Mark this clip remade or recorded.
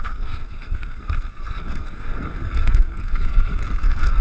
remade